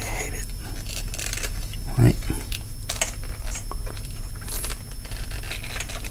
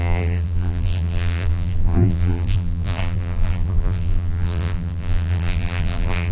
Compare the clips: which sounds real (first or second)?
first